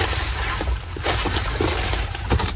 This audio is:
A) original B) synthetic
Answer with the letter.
B